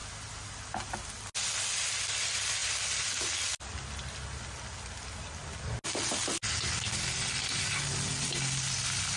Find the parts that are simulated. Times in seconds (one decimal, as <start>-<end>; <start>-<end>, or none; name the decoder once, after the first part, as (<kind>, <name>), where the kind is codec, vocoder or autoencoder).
none